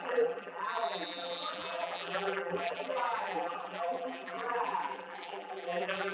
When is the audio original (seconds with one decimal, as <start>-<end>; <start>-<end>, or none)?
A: none